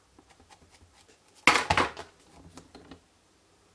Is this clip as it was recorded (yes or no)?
yes